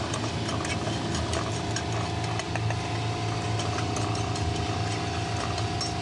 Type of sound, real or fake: real